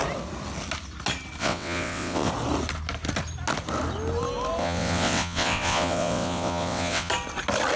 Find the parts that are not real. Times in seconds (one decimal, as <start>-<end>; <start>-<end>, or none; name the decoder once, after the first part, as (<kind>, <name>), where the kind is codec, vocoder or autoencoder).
1.4-2.3 (vocoder, WaveNeXt); 4.6-7.1